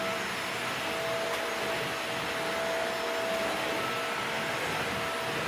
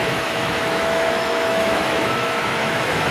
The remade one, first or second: second